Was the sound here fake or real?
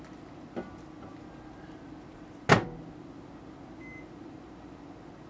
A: real